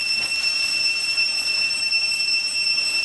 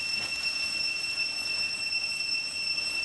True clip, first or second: first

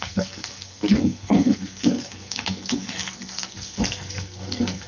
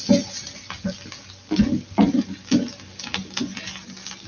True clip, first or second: second